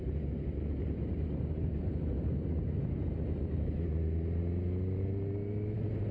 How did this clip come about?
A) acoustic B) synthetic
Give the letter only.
A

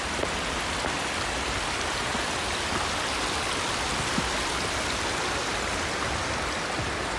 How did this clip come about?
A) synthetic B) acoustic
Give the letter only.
B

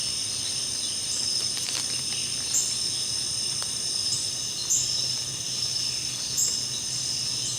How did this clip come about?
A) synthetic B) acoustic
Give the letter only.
A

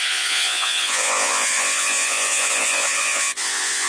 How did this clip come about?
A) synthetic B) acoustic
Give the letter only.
A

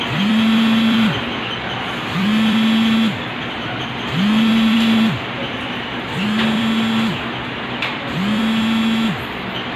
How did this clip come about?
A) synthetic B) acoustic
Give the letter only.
A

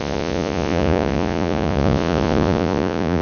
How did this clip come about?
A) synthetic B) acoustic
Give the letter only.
A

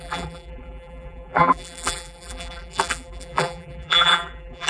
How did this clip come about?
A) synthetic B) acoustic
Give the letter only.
A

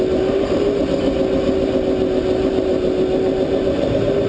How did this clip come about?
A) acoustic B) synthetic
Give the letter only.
A